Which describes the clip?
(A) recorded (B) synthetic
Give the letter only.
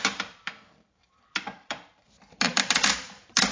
B